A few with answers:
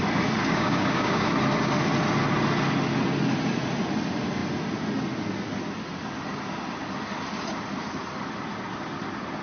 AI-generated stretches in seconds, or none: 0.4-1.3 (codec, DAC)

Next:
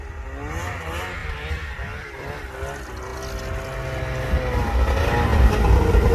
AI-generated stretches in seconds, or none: 1.2-2.4 (vocoder, BigVGAN v2); 5.3-6.1

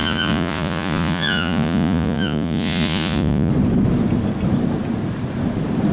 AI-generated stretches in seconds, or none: 0.0-3.5 (vocoder, Vocos)